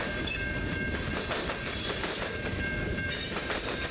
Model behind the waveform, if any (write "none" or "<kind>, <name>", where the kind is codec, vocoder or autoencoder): vocoder, BigVGAN v2